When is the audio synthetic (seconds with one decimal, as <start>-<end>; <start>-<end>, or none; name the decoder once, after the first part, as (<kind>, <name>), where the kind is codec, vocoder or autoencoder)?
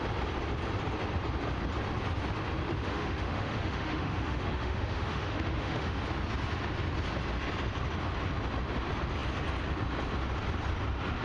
2.7-6.0 (autoencoder, DAC-VAE)